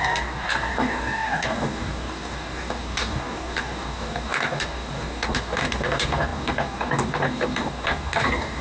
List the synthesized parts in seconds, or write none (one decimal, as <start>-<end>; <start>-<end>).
0.0-8.6